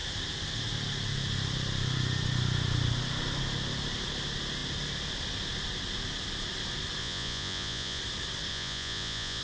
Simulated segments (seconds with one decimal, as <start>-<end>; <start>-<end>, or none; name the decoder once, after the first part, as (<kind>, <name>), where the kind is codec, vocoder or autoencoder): 7.0-8.0 (vocoder, Vocos); 8.5-9.4